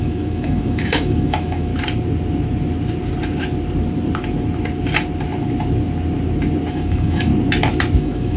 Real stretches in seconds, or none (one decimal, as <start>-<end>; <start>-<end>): 1.7-6.7; 7.3-8.0